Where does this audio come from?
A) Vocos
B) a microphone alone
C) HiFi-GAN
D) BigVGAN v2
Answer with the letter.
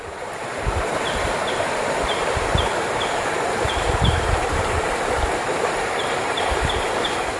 D